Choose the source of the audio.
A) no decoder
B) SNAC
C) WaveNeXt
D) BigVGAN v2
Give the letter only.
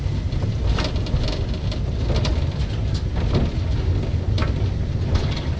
A